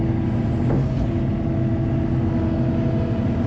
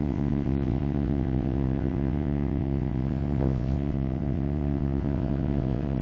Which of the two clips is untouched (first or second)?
first